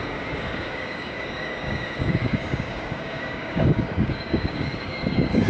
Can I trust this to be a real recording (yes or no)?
no